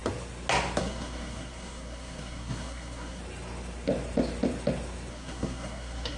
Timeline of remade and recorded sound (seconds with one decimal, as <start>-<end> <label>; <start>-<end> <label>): 0.0-0.8 recorded; 0.8-3.2 remade; 3.2-5.1 recorded; 5.1-6.2 remade